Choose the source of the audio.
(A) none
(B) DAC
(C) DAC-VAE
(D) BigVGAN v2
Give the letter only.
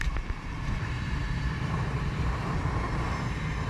D